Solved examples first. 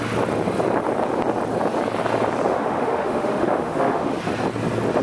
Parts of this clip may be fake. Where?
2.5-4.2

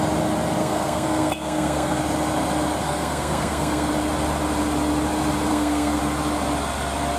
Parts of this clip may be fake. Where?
0.6-2.0; 2.8-3.9; 5.5-6.0

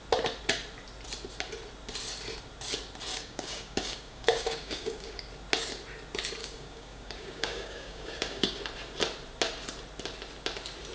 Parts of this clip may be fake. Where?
3.1-5.3; 6.4-8.6

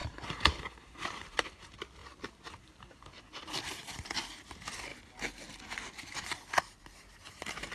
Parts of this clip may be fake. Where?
0.0-1.6